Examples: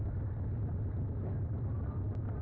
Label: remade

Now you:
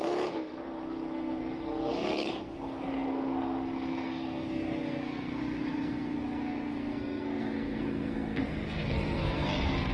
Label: remade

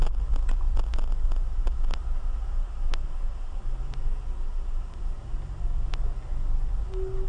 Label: recorded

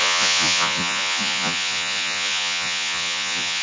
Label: remade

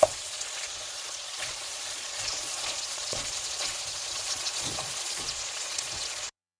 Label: remade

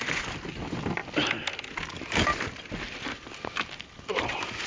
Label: recorded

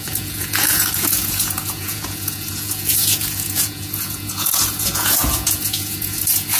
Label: remade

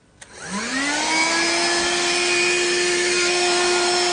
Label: recorded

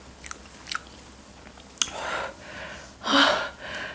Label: recorded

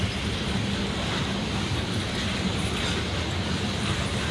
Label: recorded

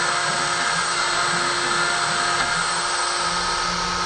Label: recorded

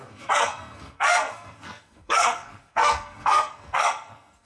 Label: remade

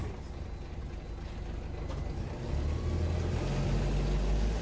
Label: recorded